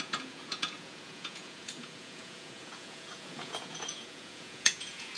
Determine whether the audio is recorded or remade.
remade